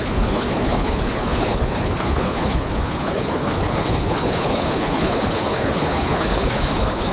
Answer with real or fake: fake